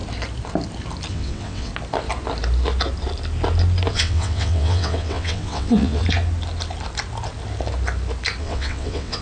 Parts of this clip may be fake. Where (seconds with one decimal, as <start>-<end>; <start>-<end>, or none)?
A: 1.1-1.7; 3.9-6.0; 8.4-9.2